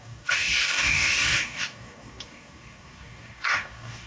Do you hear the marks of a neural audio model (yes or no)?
yes